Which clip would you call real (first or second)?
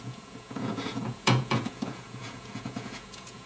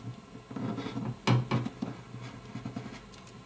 second